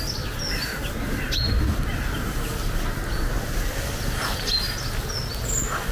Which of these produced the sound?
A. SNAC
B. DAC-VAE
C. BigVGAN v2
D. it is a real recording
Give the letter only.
D